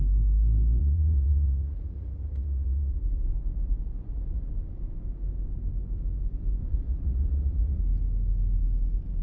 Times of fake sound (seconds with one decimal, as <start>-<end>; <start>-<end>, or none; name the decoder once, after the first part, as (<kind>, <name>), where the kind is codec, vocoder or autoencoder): 0.8-4.5 (vocoder, Vocos); 6.6-7.8